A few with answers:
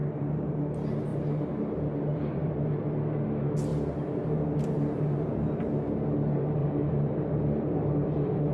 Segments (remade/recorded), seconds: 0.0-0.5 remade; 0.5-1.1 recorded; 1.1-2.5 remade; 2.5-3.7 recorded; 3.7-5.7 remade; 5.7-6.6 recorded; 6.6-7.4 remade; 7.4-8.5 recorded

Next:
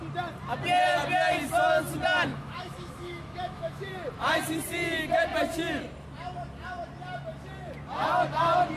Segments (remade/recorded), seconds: 0.0-2.3 recorded; 2.3-3.9 remade; 3.9-8.8 recorded

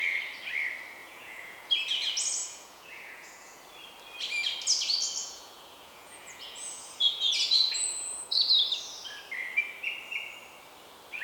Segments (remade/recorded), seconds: 0.0-1.0 recorded; 1.0-1.7 remade; 1.7-2.4 recorded; 2.4-3.6 remade; 3.6-5.2 recorded; 5.2-8.5 remade; 8.5-11.2 recorded

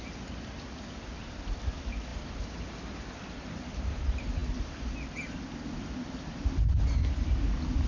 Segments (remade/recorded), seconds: 0.0-7.9 recorded

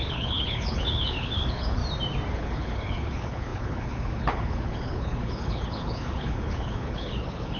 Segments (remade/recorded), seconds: 0.0-1.8 remade; 1.8-2.3 recorded; 2.3-7.6 remade

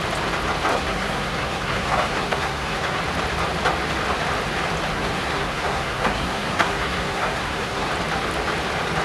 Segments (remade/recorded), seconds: 0.0-0.7 recorded; 0.7-3.0 remade; 3.0-4.9 recorded; 4.9-7.9 remade; 7.9-9.0 recorded

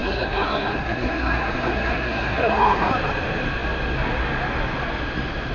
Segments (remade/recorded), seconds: 0.0-2.9 remade; 2.9-5.5 recorded